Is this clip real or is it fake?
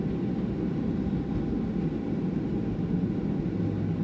real